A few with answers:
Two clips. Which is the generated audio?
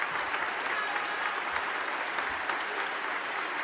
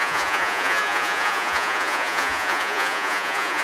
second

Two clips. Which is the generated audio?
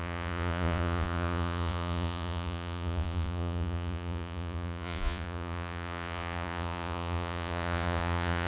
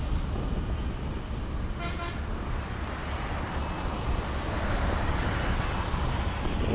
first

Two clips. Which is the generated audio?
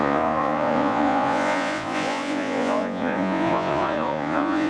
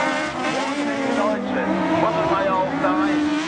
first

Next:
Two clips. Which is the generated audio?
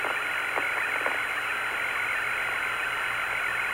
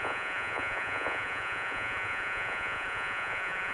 second